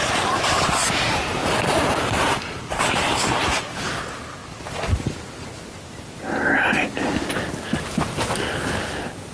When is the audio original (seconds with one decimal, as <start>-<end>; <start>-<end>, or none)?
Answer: 0.0-1.4; 3.9-9.3